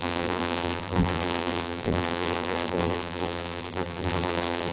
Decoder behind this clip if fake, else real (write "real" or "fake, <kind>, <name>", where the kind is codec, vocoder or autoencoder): fake, vocoder, BigVGAN v2